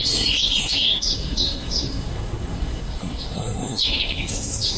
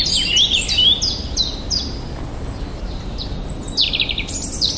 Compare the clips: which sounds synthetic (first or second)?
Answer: first